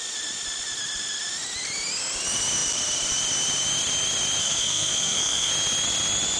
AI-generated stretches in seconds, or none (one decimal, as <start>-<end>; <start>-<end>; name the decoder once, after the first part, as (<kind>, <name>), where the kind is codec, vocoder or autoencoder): 4.4-5.5 (codec, SNAC)